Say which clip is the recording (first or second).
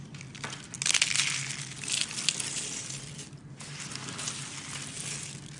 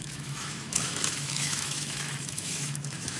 first